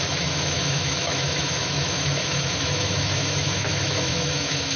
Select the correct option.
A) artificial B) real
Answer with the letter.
A